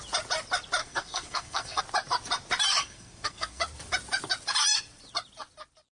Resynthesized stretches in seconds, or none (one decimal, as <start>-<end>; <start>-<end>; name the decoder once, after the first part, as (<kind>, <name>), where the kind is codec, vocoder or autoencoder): 0.8-1.8 (codec, SNAC); 2.8-3.6